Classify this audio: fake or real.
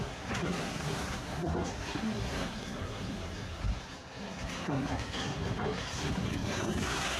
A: fake